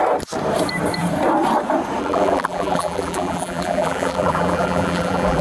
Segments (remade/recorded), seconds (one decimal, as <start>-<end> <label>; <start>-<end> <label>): 0.0-2.0 recorded; 2.0-5.4 remade